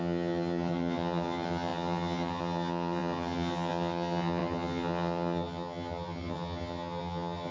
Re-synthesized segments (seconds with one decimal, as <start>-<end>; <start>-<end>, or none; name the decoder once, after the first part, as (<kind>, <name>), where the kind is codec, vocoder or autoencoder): 0.0-7.5 (vocoder, HiFi-GAN)